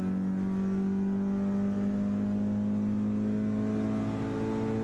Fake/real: real